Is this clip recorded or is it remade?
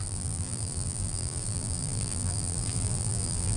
remade